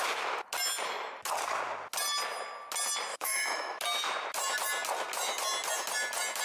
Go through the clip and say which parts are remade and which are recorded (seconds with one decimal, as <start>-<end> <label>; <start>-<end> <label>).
0.0-3.1 recorded; 3.1-3.8 remade; 3.8-6.4 recorded